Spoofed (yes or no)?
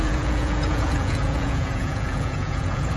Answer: yes